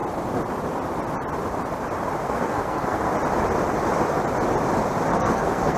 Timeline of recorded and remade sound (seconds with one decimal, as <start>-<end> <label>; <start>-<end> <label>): 0.0-2.2 recorded; 2.2-3.1 remade; 3.1-5.1 recorded; 5.1-5.8 remade